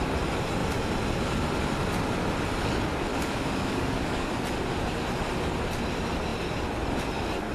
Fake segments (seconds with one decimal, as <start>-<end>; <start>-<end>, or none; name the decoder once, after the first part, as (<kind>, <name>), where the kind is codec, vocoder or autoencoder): 3.1-4.3 (codec, DAC)